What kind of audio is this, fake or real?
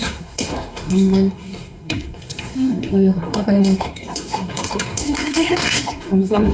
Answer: fake